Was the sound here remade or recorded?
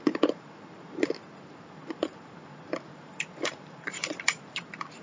remade